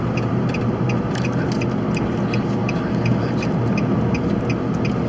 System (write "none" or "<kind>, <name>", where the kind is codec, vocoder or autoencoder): none